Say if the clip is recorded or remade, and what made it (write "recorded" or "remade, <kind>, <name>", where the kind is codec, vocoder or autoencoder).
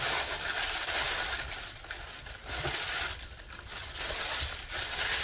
remade, vocoder, BigVGAN v2